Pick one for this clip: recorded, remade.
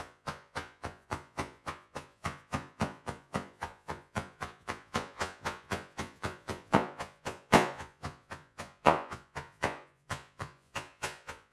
remade